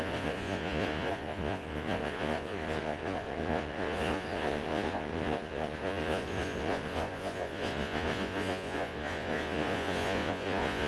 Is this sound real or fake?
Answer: fake